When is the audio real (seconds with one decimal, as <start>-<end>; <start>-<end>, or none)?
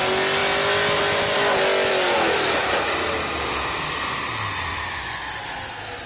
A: 0.0-4.7; 5.2-6.1